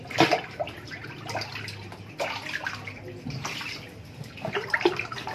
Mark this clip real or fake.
real